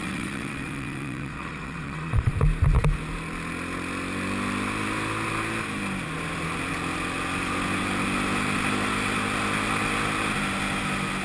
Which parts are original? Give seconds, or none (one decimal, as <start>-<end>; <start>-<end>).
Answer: 2.3-11.2